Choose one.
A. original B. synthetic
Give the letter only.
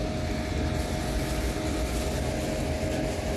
A